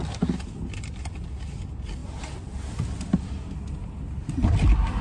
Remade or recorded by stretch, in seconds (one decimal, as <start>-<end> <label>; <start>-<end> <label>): 0.0-5.0 recorded